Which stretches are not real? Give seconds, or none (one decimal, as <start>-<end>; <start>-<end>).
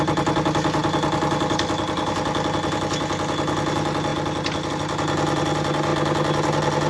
none